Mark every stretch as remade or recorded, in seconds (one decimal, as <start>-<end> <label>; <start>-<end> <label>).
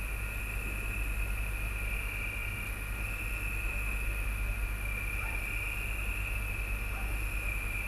0.0-7.9 recorded